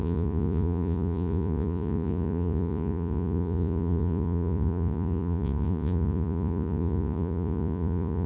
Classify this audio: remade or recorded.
remade